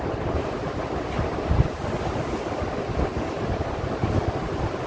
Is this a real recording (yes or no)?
yes